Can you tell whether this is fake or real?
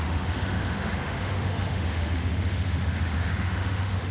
fake